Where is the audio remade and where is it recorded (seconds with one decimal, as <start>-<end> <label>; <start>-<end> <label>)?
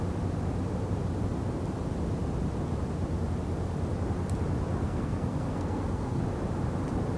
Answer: 0.0-4.7 recorded; 4.7-6.2 remade; 6.2-7.2 recorded